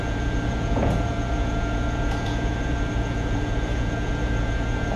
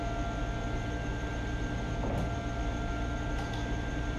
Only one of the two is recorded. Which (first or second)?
second